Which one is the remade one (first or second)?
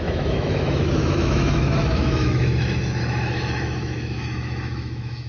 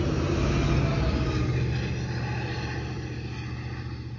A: first